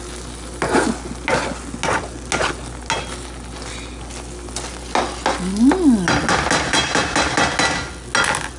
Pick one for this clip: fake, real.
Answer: real